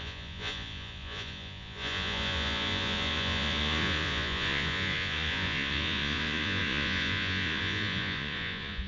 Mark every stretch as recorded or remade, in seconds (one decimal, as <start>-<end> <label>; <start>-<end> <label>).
0.0-8.9 remade